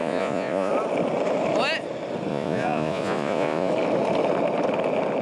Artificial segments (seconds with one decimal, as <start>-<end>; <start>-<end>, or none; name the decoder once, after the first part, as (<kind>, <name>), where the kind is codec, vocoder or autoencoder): 0.0-0.7 (vocoder, Vocos); 2.3-3.7